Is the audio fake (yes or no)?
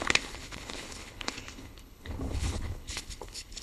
yes